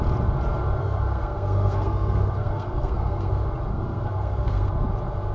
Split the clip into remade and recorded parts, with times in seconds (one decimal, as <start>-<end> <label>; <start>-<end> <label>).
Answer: 0.0-0.8 recorded; 0.8-3.3 remade; 3.3-3.7 recorded; 3.7-4.7 remade; 4.7-5.3 recorded

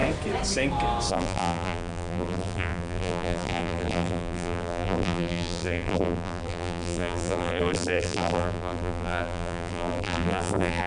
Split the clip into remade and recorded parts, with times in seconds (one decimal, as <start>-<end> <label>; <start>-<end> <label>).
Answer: 0.0-1.1 recorded; 1.1-10.9 remade

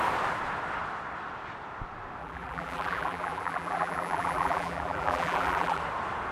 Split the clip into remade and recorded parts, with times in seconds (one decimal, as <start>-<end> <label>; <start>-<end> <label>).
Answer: 0.0-2.2 recorded; 2.2-5.8 remade; 5.8-6.3 recorded

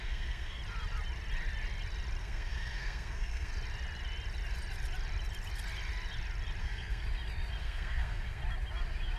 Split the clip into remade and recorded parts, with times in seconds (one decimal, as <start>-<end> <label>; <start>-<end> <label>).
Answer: 0.0-0.6 remade; 0.6-2.2 recorded; 2.2-3.5 remade; 3.5-6.6 recorded; 6.6-7.0 remade; 7.0-7.6 recorded; 7.6-8.4 remade; 8.4-9.2 recorded